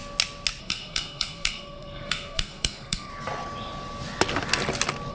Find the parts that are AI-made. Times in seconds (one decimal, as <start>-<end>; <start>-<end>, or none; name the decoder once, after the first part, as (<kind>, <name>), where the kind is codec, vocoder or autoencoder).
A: 0.6-3.1 (codec, SNAC)